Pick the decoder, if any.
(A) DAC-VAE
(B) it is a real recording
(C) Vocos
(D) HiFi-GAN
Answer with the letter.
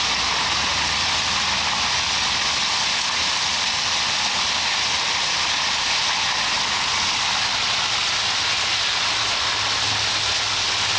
B